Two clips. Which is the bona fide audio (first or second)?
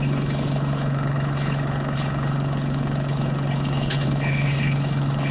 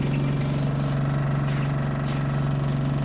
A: second